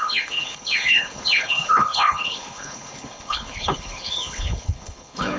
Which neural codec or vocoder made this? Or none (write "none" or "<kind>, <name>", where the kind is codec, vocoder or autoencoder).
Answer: codec, HILCodec